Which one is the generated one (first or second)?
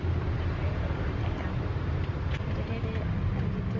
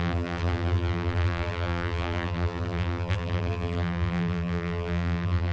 second